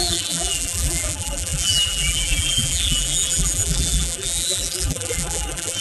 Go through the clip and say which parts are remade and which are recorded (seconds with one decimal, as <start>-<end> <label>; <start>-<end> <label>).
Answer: 0.0-5.8 remade